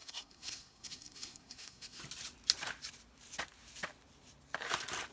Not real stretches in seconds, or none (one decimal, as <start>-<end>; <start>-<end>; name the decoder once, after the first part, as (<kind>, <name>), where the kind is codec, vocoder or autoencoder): 0.0-2.0 (codec, SNAC)